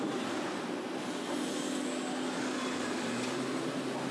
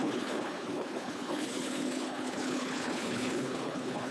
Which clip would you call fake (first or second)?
second